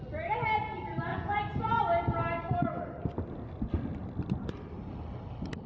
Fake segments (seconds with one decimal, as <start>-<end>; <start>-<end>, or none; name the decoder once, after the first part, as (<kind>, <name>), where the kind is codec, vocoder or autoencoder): 1.1-1.8 (vocoder, Vocos)